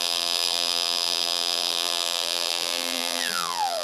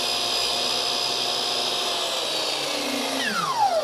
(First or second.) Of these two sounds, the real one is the second